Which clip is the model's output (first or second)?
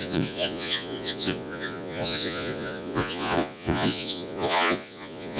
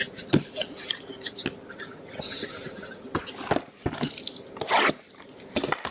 first